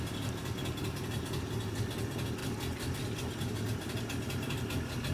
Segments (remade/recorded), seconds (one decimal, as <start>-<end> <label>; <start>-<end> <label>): 0.0-2.4 recorded; 2.4-3.0 remade; 3.0-5.1 recorded